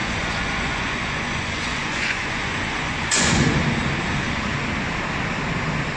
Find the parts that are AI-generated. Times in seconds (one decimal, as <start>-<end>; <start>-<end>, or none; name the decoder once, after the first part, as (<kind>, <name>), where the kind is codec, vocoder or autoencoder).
0.0-3.6 (vocoder, Vocos)